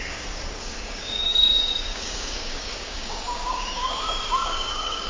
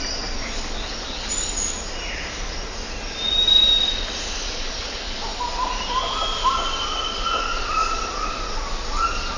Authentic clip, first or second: second